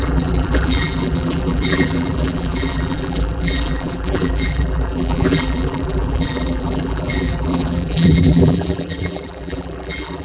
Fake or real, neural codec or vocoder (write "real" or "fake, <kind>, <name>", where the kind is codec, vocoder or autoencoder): fake, vocoder, BigVGAN v2